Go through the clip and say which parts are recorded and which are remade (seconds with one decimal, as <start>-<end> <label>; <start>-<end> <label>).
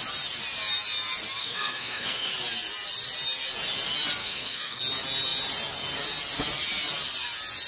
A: 0.0-1.4 recorded; 1.4-2.3 remade; 2.3-4.2 recorded; 4.2-4.8 remade; 4.8-7.7 recorded